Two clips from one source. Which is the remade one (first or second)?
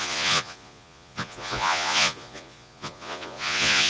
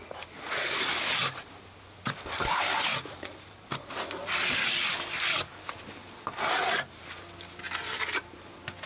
first